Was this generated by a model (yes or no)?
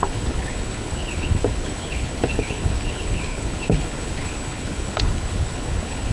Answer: yes